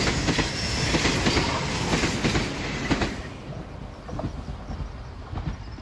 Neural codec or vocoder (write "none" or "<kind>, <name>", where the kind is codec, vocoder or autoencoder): none